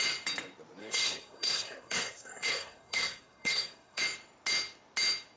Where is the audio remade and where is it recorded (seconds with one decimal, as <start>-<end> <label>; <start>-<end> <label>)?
0.0-0.8 recorded; 0.8-4.0 remade; 4.0-5.4 recorded